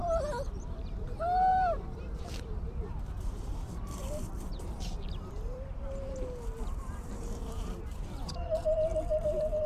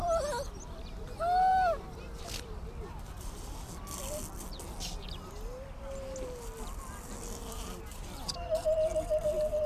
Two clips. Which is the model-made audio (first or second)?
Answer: first